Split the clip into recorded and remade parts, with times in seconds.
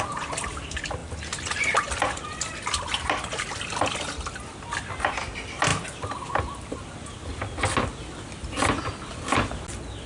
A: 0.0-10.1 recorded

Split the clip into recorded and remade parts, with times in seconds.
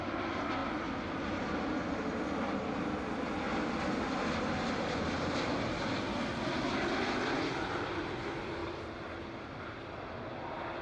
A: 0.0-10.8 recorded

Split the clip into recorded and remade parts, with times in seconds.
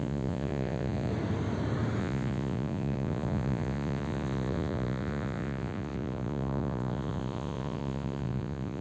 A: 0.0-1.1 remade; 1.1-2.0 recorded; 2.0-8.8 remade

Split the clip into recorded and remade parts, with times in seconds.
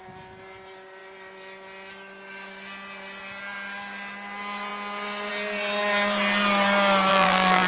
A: 0.0-7.1 recorded; 7.1-7.7 remade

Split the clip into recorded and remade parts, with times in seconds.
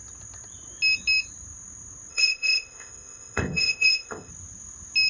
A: 0.0-2.1 recorded; 2.1-4.3 remade; 4.3-5.1 recorded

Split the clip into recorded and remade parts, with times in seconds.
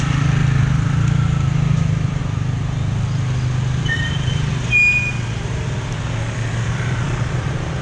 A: 0.0-0.4 remade; 0.4-1.5 recorded; 1.5-2.2 remade; 2.2-3.8 recorded; 3.8-4.5 remade; 4.5-6.5 recorded; 6.5-7.8 remade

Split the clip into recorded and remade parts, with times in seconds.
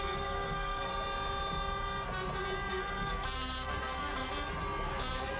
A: 0.0-0.9 remade; 0.9-2.7 recorded; 2.7-4.1 remade; 4.1-5.0 recorded; 5.0-5.4 remade